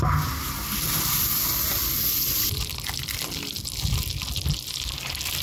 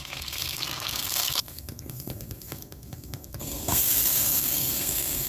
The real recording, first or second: first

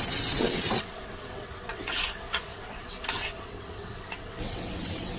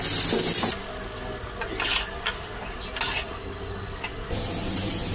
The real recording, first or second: second